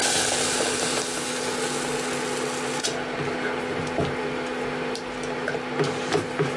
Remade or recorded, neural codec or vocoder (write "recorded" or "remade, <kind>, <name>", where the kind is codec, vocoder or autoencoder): recorded